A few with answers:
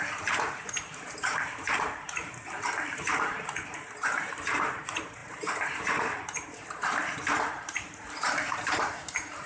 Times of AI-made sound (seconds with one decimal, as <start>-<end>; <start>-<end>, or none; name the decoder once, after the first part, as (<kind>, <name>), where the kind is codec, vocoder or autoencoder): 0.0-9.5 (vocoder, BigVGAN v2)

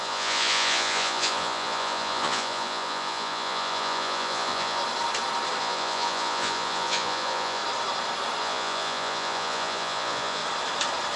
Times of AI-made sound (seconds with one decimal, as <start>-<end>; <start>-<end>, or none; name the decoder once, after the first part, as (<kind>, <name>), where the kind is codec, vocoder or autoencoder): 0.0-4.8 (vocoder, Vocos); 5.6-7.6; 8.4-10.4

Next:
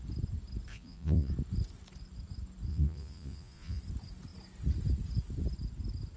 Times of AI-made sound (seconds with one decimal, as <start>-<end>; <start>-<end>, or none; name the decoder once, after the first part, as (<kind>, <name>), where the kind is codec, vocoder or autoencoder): 0.7-1.3 (vocoder, Vocos); 2.7-3.8

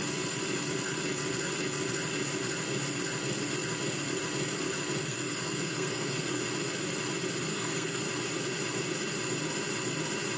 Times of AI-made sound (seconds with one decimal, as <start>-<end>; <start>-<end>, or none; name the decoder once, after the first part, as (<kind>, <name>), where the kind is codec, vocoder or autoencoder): 5.0-6.2 (codec, SNAC); 7.5-8.0

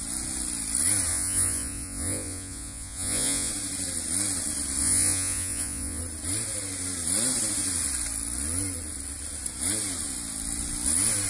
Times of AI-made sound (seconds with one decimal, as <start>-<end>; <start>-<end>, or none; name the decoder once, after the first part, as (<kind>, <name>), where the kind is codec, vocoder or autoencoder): 1.1-3.5 (vocoder, Vocos); 4.8-6.0

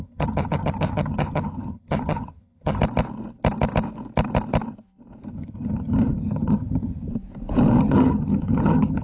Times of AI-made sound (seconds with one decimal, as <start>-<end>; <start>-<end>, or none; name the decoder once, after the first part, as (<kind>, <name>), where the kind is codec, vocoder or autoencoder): 0.0-2.8 (vocoder, HiFi-GAN); 5.3-7.1; 7.8-9.0

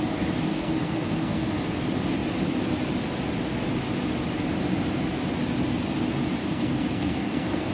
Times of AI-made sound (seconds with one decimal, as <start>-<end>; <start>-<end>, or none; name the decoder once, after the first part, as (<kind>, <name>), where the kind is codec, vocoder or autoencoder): 0.5-1.5 (codec, SNAC); 6.4-7.7

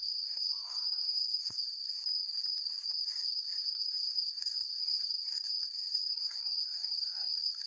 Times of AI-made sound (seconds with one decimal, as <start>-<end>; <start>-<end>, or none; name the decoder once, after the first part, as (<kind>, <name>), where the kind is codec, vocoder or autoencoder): 0.0-2.0 (codec, SNAC); 3.0-7.7